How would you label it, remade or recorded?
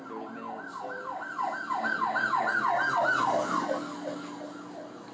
recorded